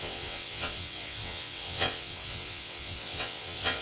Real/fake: fake